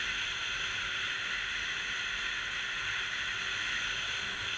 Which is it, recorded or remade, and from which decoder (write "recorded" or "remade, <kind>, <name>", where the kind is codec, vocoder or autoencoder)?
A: recorded